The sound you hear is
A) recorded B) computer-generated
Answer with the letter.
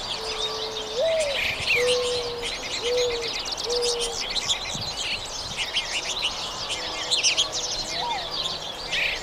A